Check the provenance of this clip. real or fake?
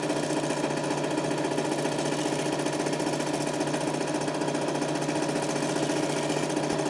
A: real